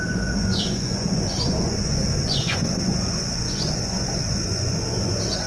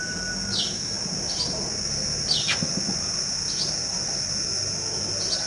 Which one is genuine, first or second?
second